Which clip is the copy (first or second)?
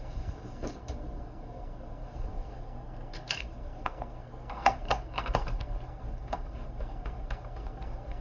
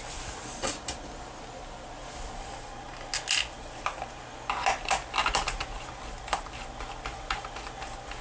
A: first